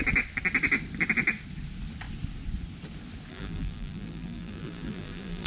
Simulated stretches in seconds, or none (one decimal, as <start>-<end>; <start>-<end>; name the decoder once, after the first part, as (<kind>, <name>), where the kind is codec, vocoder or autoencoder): 3.3-5.5 (vocoder, BigVGAN v2)